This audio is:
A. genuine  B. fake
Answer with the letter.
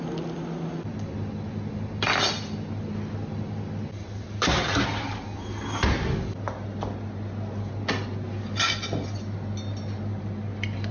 A